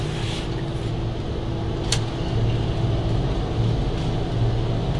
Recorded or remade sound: recorded